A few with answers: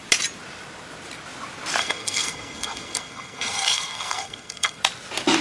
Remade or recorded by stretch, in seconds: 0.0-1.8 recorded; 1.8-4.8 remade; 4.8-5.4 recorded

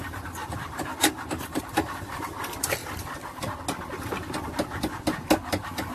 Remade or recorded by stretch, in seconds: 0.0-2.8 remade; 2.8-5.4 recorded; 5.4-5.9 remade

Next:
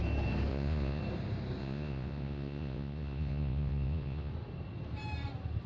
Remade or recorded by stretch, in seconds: 0.0-0.5 recorded; 0.5-1.0 remade; 1.0-1.6 recorded; 1.6-4.3 remade; 4.3-5.7 recorded